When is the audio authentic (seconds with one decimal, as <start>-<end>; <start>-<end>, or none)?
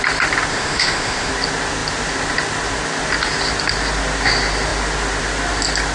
0.0-0.5; 1.3-5.9